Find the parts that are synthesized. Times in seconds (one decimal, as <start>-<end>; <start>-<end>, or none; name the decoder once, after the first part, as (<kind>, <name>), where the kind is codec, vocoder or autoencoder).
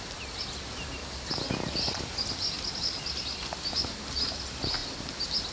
none